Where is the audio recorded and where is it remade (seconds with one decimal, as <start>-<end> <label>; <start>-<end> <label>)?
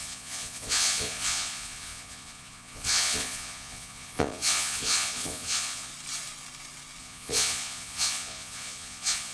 0.0-5.9 remade; 5.9-7.0 recorded; 7.0-9.3 remade